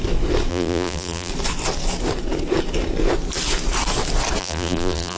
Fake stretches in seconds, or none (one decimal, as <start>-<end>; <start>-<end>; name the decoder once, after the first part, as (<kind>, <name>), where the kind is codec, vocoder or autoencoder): 0.5-1.3 (vocoder, BigVGAN v2); 4.4-5.2